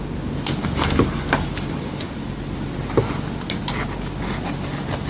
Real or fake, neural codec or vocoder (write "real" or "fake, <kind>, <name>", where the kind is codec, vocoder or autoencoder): real